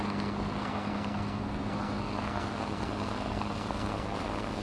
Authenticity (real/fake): fake